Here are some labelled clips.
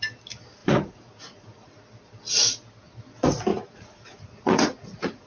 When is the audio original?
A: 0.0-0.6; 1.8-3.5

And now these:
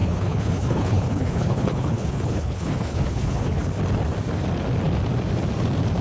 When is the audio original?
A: 3.6-6.0

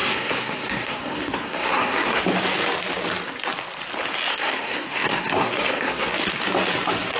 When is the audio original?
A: 2.2-4.3; 6.1-7.2

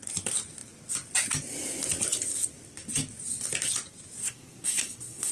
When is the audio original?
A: 0.0-4.2

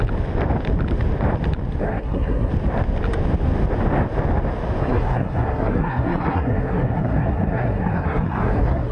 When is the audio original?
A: 0.0-1.8; 2.5-4.8